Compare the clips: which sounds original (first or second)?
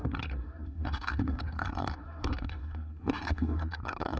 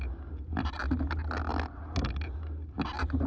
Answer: second